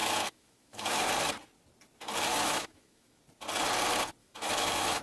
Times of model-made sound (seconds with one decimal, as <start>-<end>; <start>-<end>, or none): 0.0-1.1; 2.3-3.2; 4.2-5.0